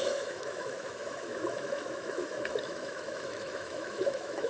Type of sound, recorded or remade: remade